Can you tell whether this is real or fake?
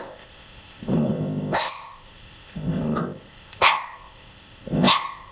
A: fake